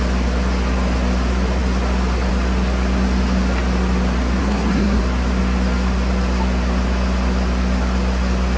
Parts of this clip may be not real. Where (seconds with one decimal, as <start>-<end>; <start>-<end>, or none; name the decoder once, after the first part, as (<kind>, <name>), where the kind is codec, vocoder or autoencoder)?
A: 4.4-5.0 (codec, SNAC)